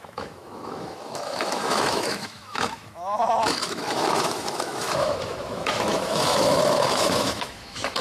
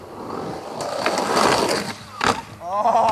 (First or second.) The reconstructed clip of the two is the first